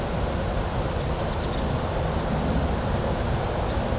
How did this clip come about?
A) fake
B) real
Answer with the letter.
B